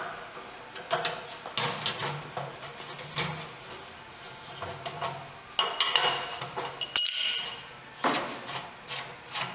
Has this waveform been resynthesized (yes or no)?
no